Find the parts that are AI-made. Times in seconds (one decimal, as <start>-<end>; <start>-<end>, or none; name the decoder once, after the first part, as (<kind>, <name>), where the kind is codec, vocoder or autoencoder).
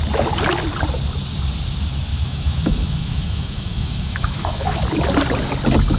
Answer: 2.1-4.8 (autoencoder, DAC-VAE)